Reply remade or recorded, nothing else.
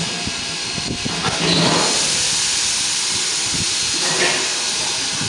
recorded